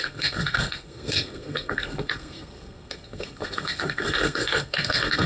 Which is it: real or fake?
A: fake